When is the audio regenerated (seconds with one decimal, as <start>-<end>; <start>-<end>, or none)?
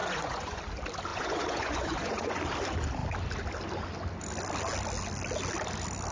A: 0.0-0.6; 1.1-2.4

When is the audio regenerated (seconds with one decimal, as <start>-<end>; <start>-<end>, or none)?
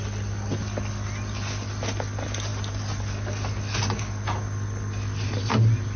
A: none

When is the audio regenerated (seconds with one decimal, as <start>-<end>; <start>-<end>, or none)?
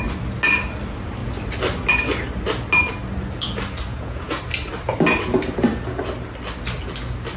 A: 3.9-4.4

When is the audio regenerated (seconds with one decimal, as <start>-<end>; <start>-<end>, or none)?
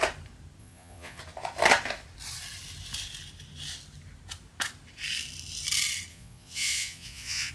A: 0.6-1.2; 6.1-7.5